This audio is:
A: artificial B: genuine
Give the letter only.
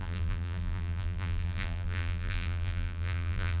A